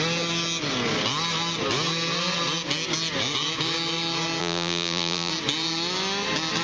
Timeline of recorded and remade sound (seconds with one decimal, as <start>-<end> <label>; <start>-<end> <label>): 0.0-4.4 recorded; 4.4-5.3 remade; 5.3-6.6 recorded